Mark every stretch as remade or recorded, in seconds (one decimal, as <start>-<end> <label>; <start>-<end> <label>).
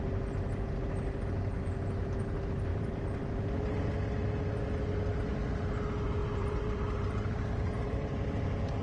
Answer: 0.0-2.7 recorded; 2.7-3.3 remade; 3.3-6.2 recorded; 6.2-8.3 remade; 8.3-8.8 recorded